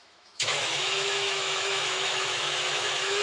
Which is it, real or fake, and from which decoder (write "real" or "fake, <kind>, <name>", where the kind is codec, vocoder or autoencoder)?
fake, autoencoder, DAC-VAE